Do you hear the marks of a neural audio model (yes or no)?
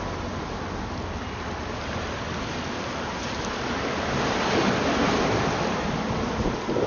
no